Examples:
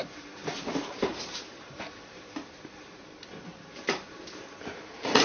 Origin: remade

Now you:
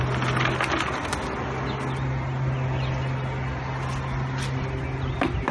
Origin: recorded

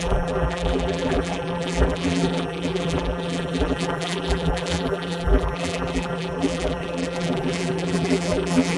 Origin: remade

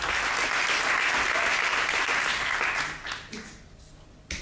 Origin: recorded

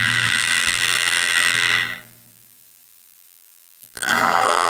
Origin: remade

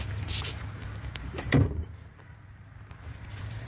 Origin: remade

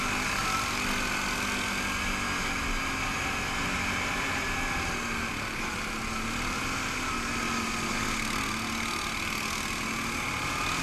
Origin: recorded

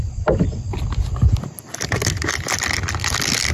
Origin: recorded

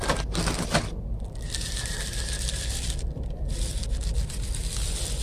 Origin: recorded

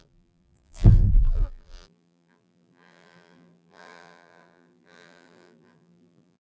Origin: remade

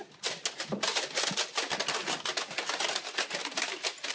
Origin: recorded